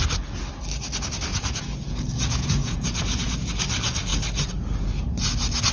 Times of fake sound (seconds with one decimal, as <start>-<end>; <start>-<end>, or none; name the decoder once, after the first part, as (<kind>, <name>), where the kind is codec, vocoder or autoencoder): 1.3-3.5 (vocoder, Vocos)

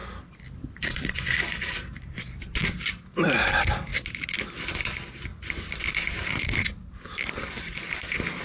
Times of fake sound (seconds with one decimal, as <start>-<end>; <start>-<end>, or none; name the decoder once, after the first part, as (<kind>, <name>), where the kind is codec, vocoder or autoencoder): 0.0-2.6 (vocoder, BigVGAN v2); 5.3-7.8

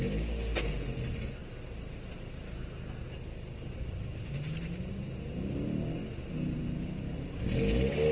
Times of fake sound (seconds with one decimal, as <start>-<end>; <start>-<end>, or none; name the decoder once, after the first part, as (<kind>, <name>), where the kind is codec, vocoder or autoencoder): none